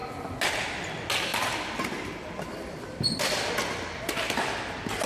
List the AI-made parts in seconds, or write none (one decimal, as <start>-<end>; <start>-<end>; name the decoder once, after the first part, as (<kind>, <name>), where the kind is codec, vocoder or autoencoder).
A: 1.3-3.5 (vocoder, BigVGAN v2)